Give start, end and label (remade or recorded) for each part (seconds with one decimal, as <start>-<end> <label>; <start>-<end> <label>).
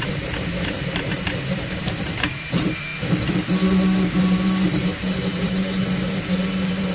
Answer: 0.0-2.9 remade; 2.9-4.2 recorded; 4.2-6.9 remade